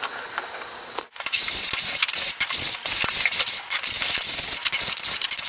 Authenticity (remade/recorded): recorded